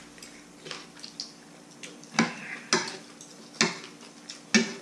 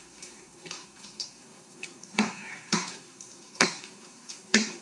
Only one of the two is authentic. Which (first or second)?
first